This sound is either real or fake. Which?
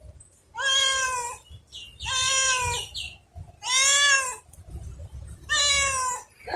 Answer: real